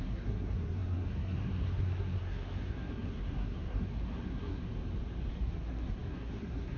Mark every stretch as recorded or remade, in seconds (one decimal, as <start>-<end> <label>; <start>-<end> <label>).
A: 0.0-4.7 remade; 4.7-5.3 recorded; 5.3-6.8 remade